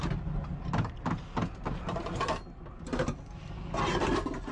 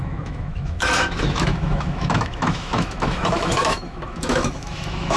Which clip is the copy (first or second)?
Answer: second